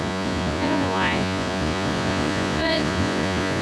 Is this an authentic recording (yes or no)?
no